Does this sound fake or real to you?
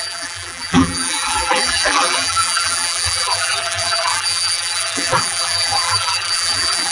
fake